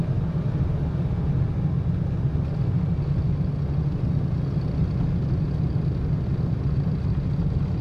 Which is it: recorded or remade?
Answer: recorded